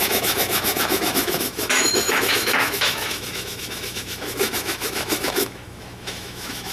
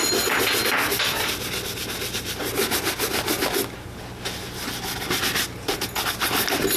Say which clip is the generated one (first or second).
first